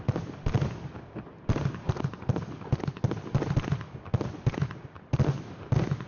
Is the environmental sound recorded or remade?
recorded